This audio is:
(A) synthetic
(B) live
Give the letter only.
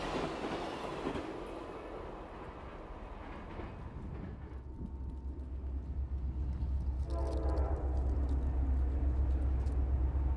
B